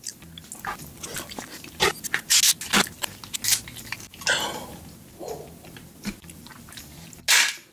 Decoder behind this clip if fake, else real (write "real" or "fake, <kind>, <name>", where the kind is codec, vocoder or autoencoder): real